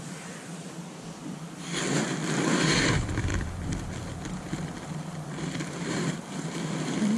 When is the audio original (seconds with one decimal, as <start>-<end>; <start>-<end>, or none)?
1.9-2.9